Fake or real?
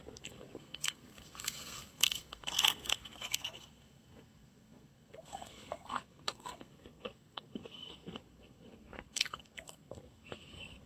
fake